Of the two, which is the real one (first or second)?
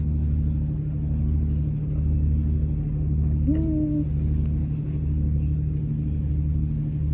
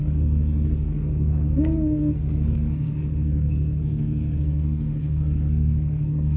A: first